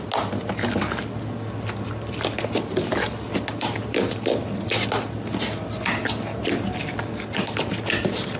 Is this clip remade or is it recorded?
recorded